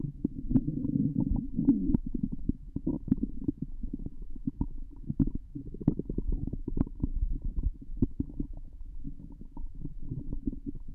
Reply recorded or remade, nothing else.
remade